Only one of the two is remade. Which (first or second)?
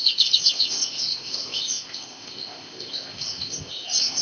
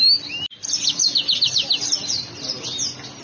first